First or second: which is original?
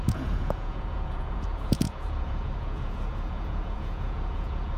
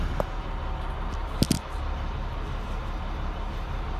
second